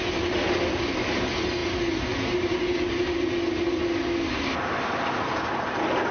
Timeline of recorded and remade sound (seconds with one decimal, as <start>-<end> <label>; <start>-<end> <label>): 0.0-6.1 recorded